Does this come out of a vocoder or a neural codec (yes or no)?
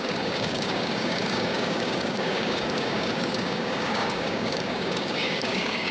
yes